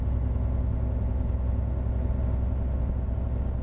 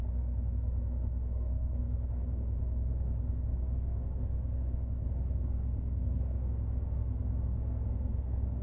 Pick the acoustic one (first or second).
first